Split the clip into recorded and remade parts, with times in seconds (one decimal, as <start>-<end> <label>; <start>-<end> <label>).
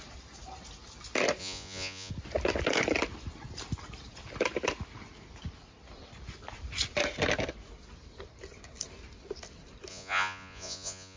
0.0-1.4 recorded; 1.4-2.1 remade; 2.1-9.9 recorded; 9.9-11.2 remade